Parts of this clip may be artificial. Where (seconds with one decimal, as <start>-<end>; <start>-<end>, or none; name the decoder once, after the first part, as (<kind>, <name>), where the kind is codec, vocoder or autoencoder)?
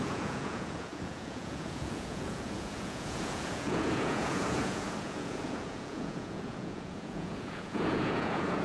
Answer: 0.0-8.6 (vocoder, Vocos)